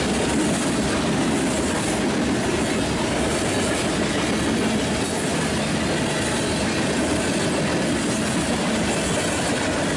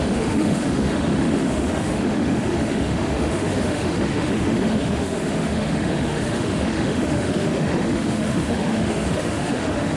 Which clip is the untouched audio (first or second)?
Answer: first